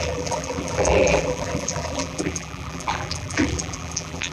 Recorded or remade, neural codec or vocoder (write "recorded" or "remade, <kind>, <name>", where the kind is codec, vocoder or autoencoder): remade, vocoder, BigVGAN v2